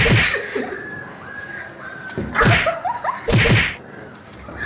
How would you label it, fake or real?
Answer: real